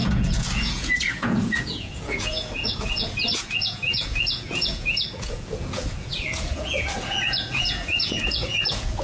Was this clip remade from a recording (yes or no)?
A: yes